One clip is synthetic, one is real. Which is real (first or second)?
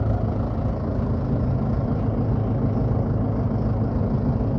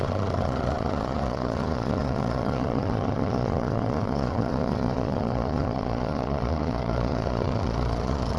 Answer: first